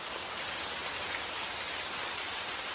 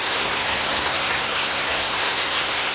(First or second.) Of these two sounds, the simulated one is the second